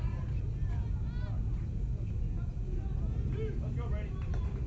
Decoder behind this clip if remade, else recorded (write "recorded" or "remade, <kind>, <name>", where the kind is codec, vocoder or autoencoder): recorded